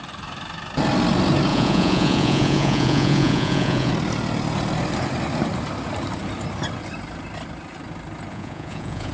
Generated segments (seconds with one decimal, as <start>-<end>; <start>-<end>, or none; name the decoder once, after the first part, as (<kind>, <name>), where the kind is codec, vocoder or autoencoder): 1.5-3.9 (vocoder, Vocos); 8.3-9.1